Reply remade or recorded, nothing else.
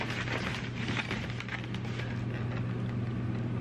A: recorded